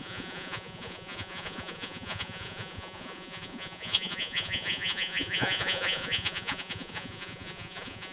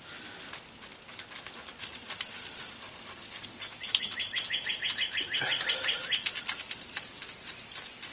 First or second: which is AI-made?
first